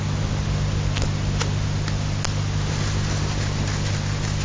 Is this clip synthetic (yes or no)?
no